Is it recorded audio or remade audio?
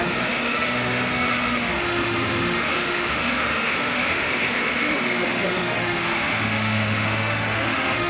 remade